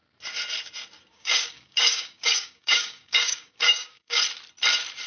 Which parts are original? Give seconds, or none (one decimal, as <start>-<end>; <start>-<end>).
0.0-1.1; 4.2-5.1